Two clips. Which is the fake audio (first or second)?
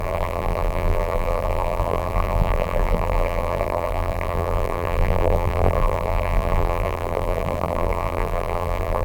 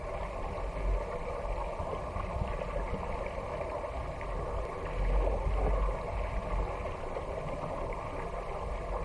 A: first